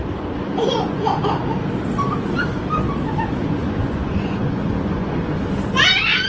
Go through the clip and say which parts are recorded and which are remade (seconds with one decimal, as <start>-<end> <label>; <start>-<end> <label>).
0.0-0.7 recorded; 0.7-1.2 remade; 1.2-3.6 recorded; 3.6-5.4 remade; 5.4-6.3 recorded